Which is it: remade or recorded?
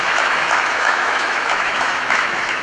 remade